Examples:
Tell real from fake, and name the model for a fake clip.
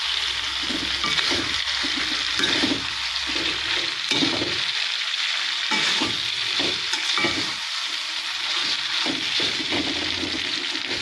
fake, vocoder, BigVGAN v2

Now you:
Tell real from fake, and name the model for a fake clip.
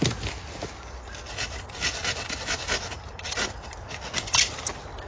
real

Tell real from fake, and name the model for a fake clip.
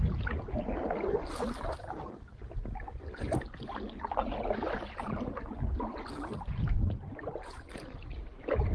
real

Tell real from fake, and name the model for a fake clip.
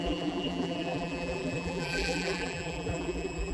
fake, vocoder, BigVGAN v2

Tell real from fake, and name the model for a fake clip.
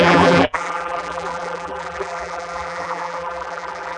fake, vocoder, BigVGAN v2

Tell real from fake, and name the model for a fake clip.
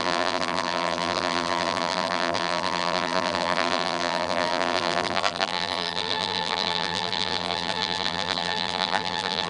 fake, vocoder, BigVGAN v2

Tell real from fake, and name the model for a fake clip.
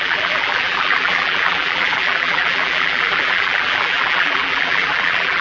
fake, vocoder, BigVGAN v2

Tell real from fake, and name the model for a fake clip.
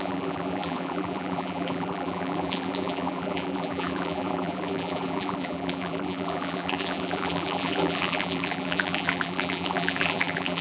fake, vocoder, BigVGAN v2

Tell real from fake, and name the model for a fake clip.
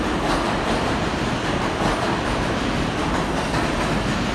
real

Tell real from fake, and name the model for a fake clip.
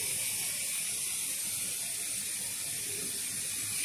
real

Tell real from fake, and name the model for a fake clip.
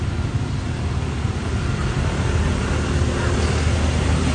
real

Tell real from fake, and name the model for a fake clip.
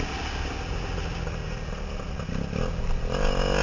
real